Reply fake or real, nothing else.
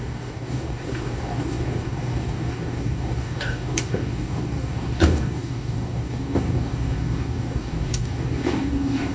fake